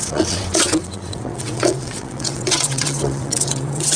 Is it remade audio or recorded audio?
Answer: remade